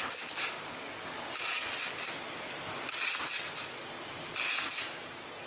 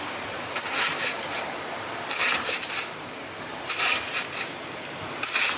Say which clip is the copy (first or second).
second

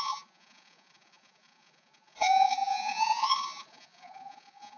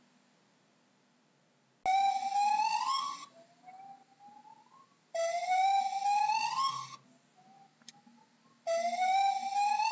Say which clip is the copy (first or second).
first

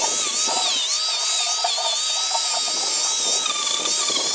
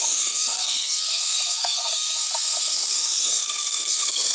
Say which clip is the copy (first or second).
second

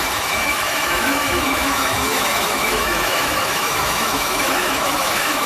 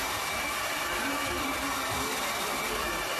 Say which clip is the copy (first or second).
first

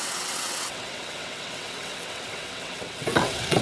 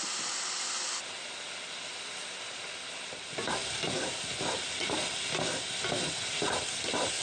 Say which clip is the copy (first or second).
first